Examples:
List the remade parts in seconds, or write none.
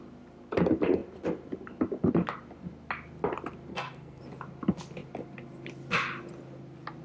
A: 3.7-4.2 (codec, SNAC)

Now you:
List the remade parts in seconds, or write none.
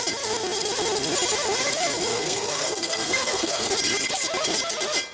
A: 2.1-3.7 (codec, SNAC)